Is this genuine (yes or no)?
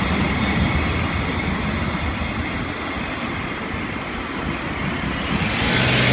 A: yes